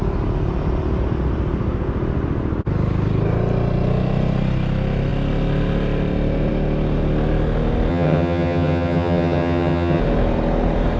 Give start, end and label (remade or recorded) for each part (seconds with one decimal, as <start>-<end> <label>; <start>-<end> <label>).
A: 0.0-7.9 recorded; 7.9-10.0 remade; 10.0-11.0 recorded